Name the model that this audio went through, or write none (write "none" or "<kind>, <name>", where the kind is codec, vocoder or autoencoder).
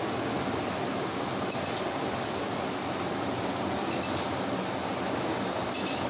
none